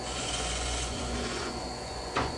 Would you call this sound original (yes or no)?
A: no